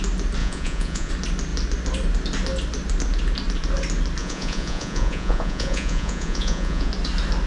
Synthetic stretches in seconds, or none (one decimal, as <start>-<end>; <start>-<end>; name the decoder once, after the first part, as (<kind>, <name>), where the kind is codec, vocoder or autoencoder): 0.4-1.1 (vocoder, Vocos); 4.2-6.9